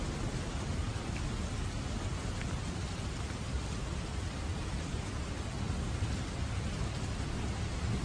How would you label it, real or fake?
real